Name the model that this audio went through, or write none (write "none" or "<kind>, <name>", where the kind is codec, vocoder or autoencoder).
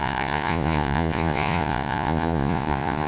vocoder, Vocos